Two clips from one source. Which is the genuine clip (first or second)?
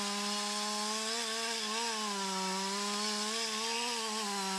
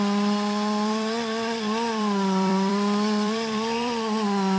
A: first